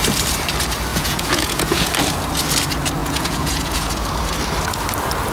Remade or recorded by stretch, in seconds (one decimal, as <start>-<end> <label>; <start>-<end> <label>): 0.0-0.9 recorded; 0.9-1.9 remade; 1.9-3.0 recorded; 3.0-3.9 remade; 3.9-5.3 recorded